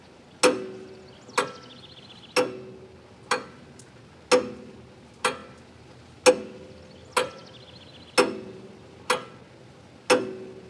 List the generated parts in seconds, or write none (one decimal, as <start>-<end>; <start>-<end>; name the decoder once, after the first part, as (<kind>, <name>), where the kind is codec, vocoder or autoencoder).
none